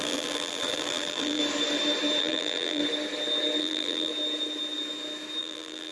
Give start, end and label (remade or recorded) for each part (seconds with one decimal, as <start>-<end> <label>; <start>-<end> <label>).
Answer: 0.0-1.4 remade; 1.4-2.2 recorded; 2.2-2.8 remade; 2.8-3.6 recorded; 3.6-4.1 remade; 4.1-5.4 recorded; 5.4-5.9 remade

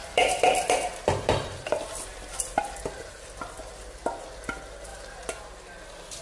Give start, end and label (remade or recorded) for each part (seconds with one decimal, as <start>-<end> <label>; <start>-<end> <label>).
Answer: 0.0-3.7 remade; 3.7-6.2 recorded

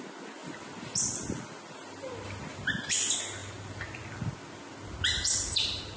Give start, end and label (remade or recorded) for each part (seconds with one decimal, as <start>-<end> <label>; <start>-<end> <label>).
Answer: 0.0-0.4 recorded; 0.4-2.9 remade; 2.9-3.4 recorded; 3.4-4.2 remade; 4.2-5.2 recorded; 5.2-6.0 remade

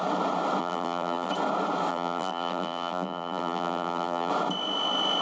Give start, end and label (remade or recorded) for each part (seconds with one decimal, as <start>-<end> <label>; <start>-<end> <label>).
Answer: 0.0-0.6 recorded; 0.6-1.3 remade; 1.3-1.9 recorded; 1.9-4.3 remade; 4.3-5.2 recorded

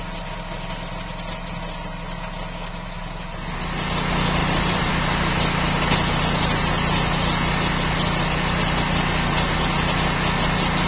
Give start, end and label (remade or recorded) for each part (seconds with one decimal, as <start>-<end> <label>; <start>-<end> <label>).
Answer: 0.0-4.4 recorded; 4.4-4.9 remade; 4.9-10.9 recorded